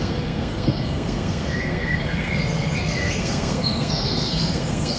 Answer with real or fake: fake